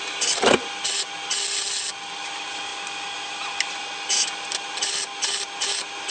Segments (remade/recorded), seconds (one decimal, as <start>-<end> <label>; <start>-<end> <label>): 0.0-6.1 recorded